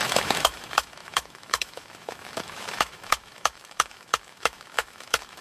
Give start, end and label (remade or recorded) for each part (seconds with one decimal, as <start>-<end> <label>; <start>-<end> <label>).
0.0-5.4 remade